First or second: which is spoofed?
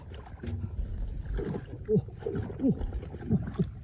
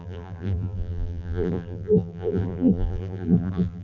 second